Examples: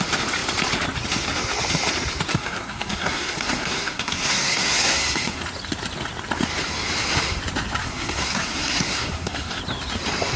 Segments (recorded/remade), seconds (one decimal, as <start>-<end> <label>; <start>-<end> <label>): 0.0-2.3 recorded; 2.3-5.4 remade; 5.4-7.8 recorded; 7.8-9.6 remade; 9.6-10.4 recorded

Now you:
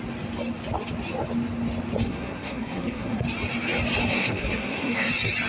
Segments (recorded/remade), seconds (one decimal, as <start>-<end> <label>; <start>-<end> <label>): 0.0-2.0 recorded; 2.0-3.2 remade; 3.2-4.0 recorded; 4.0-5.1 remade; 5.1-5.5 recorded

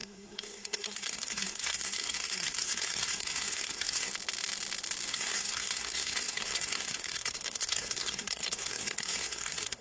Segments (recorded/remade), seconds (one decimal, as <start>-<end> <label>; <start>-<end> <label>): 0.0-4.1 remade; 4.1-5.1 recorded; 5.1-9.8 remade